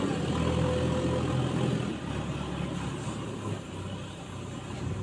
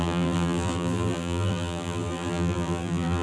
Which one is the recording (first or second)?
first